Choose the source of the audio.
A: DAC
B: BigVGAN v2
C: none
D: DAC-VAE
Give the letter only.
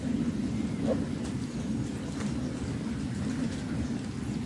C